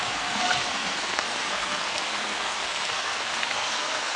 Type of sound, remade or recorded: remade